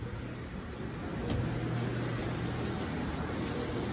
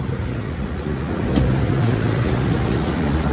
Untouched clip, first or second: first